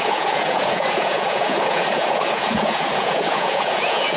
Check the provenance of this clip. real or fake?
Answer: fake